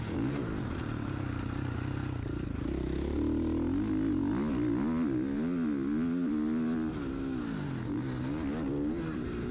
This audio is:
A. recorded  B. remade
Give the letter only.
A